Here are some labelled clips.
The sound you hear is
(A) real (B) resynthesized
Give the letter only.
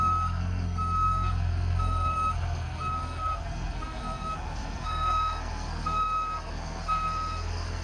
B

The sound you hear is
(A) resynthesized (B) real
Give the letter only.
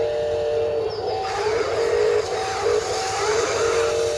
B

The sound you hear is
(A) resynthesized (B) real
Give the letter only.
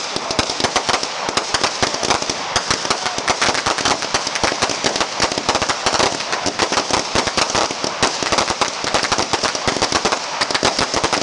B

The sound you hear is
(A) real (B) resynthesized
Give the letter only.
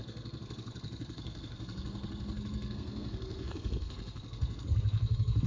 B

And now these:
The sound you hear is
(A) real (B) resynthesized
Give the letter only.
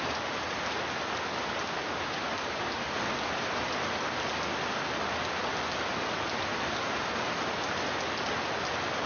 A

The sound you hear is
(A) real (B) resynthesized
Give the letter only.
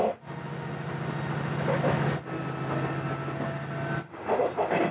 A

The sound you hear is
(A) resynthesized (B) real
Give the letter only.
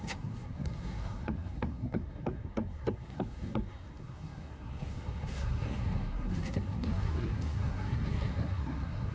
A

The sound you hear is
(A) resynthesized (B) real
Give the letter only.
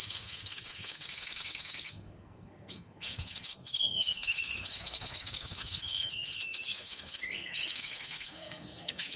A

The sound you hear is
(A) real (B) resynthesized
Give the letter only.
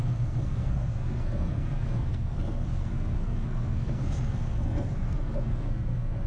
B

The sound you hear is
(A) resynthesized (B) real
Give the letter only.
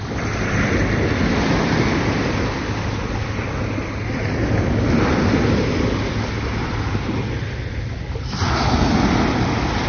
B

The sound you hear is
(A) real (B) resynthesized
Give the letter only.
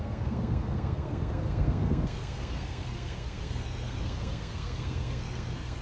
B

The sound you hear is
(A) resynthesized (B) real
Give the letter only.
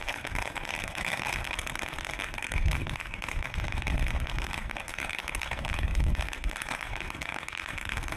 A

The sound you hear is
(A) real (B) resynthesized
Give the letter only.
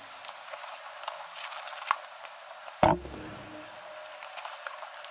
A